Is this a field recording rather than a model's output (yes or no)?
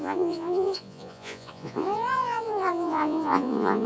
no